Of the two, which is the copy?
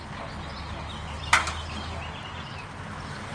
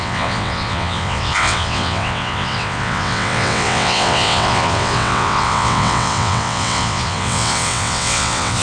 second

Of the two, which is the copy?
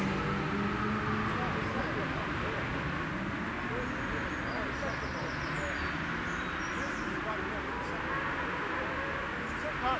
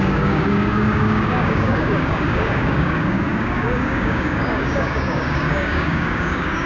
second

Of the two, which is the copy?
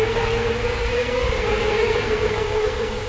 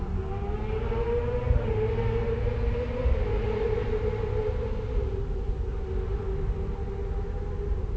first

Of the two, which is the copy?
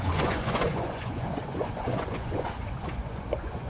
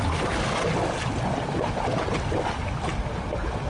first